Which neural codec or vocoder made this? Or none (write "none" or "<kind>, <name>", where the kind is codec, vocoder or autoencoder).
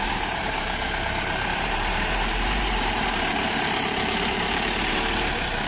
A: vocoder, BigVGAN v2